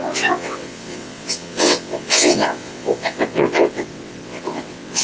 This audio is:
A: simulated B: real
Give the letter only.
A